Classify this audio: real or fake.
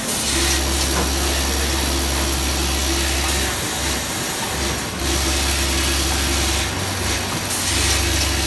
real